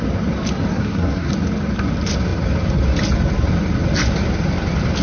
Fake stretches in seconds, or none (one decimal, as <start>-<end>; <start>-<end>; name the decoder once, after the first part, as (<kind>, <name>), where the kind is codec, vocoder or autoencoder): 0.7-1.3 (codec, SNAC)